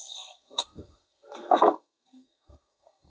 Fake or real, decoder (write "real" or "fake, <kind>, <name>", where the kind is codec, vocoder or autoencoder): fake, codec, SNAC